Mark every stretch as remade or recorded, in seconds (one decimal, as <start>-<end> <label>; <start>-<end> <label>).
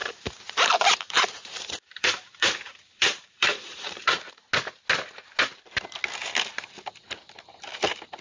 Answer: 0.0-4.3 remade; 4.3-8.2 recorded